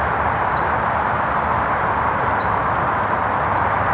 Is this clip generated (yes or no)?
no